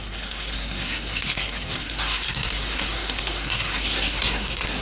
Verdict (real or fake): fake